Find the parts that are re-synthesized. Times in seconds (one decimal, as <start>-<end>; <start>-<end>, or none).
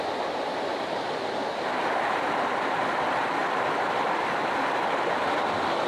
none